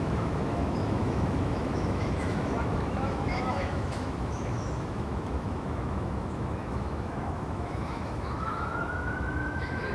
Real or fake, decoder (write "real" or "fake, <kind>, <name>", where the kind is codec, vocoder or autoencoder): fake, autoencoder, DAC-VAE